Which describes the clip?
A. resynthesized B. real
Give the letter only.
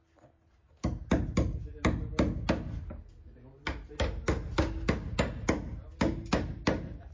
B